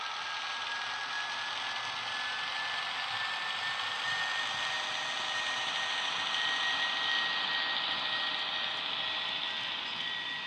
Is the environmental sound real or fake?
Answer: real